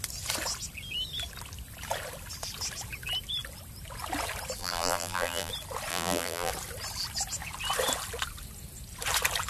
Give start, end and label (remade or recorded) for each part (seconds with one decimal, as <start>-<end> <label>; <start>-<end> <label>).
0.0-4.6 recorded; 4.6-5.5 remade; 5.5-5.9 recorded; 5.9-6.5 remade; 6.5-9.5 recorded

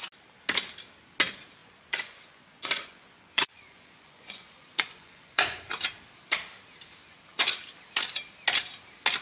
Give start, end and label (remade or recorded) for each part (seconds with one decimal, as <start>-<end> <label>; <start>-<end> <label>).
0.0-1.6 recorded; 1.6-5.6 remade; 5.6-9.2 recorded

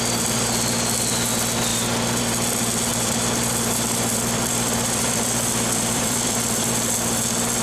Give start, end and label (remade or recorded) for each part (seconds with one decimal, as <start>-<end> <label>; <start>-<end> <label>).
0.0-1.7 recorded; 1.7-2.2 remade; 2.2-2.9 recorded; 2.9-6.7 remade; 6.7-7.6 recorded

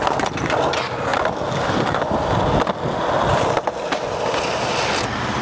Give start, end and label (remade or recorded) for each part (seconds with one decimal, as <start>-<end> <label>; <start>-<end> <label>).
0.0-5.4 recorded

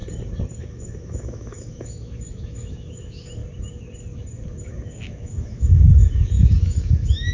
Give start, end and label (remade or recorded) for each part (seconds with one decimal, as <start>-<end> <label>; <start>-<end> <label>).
0.0-0.6 recorded; 0.6-3.4 remade; 3.4-4.6 recorded; 4.6-7.3 remade

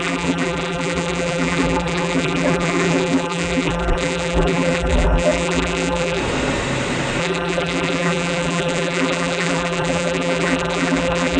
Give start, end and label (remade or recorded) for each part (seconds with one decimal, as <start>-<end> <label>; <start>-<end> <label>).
0.0-6.2 remade; 6.2-7.2 recorded; 7.2-11.4 remade

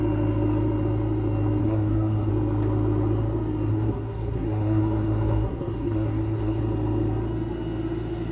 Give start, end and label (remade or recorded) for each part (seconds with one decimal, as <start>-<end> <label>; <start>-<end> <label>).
0.0-1.6 recorded; 1.6-2.3 remade; 2.3-3.7 recorded; 3.7-6.6 remade; 6.6-8.3 recorded

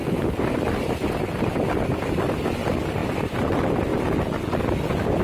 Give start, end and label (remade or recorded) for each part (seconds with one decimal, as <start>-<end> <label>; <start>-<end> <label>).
0.0-3.0 recorded; 3.0-3.5 remade; 3.5-5.2 recorded